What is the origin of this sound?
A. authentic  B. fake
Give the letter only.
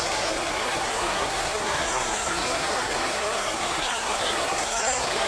B